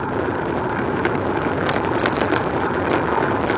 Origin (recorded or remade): remade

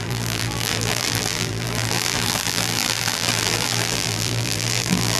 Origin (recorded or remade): remade